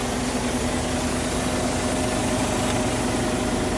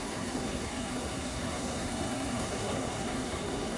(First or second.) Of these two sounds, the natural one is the first